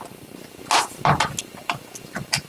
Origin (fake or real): real